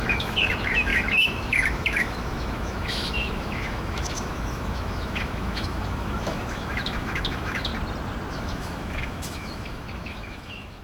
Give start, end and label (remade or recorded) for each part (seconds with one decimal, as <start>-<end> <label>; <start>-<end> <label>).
0.0-7.7 remade; 7.7-8.3 recorded; 8.3-10.8 remade